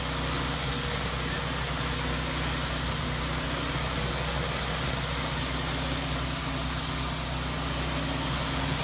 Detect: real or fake real